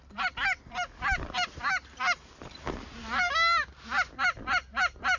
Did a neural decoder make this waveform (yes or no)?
no